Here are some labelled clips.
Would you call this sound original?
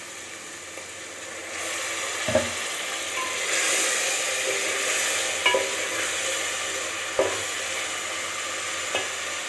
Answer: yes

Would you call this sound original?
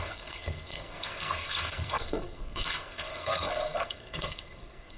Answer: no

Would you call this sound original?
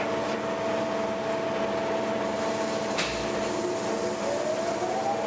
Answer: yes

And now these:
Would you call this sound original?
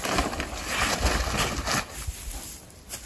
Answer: yes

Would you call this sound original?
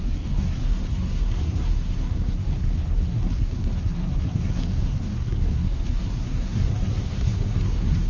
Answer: no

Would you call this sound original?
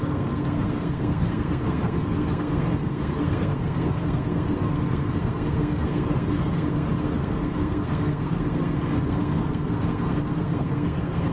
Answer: no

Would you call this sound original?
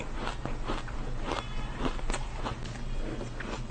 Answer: yes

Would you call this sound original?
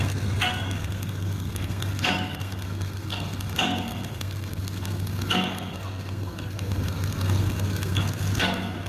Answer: no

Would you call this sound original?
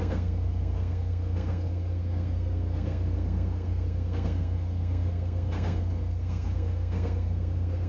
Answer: no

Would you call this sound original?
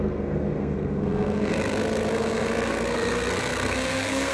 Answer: no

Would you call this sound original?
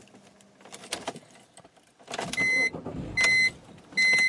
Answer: yes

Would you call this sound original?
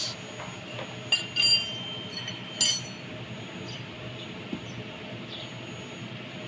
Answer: yes